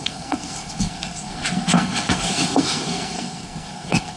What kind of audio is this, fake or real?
fake